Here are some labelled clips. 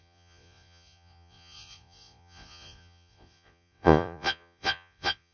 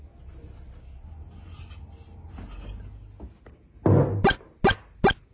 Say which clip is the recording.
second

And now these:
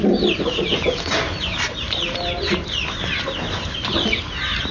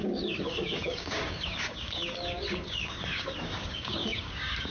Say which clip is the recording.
first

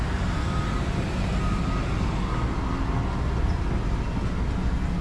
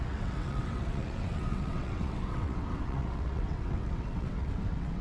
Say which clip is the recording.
first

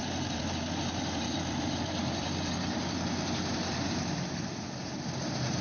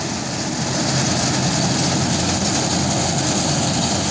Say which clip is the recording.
second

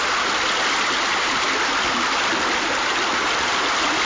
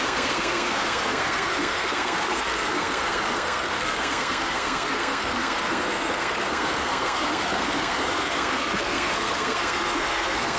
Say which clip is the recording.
first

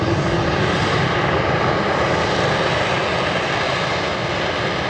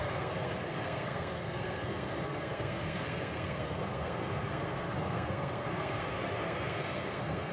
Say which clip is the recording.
first